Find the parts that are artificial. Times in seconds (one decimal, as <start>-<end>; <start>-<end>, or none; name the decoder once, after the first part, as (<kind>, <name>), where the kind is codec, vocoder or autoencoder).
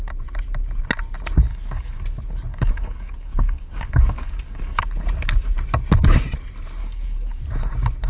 1.5-2.0 (codec, DAC); 2.5-4.8; 6.8-7.4